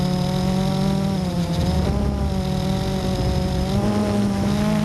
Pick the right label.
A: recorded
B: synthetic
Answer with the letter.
A